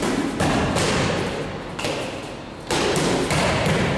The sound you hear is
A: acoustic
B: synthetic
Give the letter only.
A